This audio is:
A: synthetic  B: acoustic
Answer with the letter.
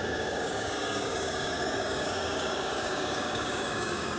A